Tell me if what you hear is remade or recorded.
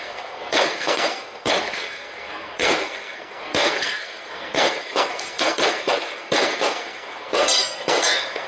remade